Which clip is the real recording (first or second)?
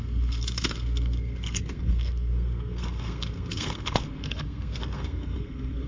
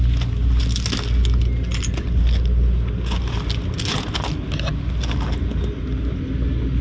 second